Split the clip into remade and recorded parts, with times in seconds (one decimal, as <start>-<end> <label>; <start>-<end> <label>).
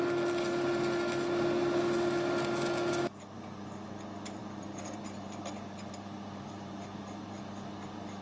0.0-4.4 recorded; 4.4-7.4 remade; 7.4-8.2 recorded